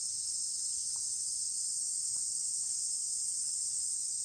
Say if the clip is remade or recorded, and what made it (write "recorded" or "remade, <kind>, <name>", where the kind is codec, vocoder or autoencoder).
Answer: recorded